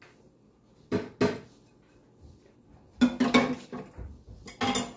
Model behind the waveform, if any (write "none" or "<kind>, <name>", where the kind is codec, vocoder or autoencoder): none